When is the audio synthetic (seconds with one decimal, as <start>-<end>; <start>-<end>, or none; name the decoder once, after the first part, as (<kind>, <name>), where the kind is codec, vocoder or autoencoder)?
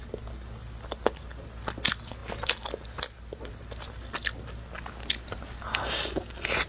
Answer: none